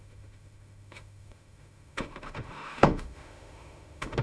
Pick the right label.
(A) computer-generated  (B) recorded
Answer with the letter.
A